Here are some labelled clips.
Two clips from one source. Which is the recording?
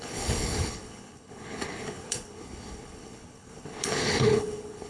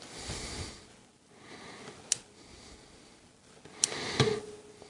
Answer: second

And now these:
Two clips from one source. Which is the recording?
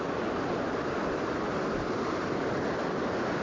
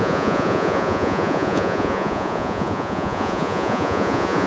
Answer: first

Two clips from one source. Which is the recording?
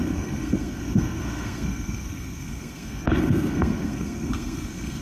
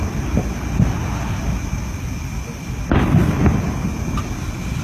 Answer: second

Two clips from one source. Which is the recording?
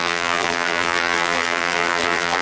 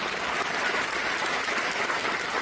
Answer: second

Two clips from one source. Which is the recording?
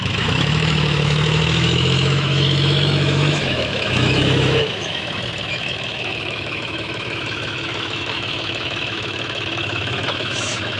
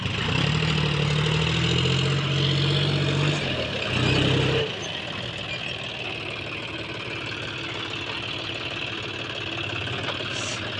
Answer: second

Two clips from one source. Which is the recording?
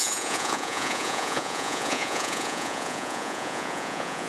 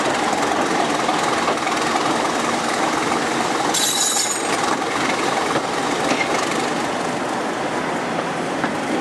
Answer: second